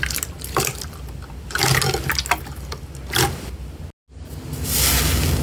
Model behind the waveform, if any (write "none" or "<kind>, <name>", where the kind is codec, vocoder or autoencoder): none